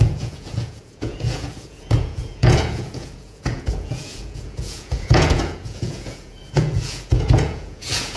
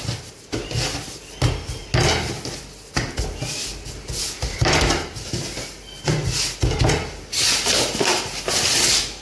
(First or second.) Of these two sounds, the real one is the second